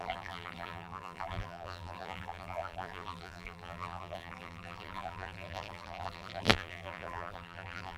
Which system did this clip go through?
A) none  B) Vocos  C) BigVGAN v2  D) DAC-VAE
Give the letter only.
C